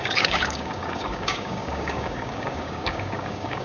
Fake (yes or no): yes